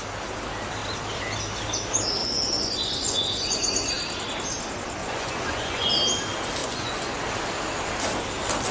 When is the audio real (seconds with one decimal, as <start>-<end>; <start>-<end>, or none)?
0.0-2.2; 3.9-5.0; 5.9-6.6; 7.2-8.7